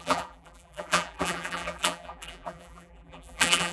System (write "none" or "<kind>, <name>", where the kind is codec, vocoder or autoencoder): vocoder, BigVGAN v2